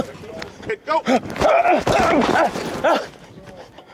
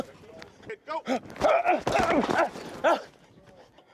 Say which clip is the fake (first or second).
first